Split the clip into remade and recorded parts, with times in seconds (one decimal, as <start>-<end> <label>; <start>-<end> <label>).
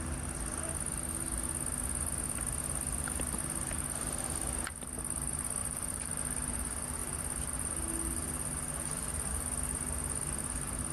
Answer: 0.0-5.6 recorded; 5.6-6.2 remade; 6.2-10.9 recorded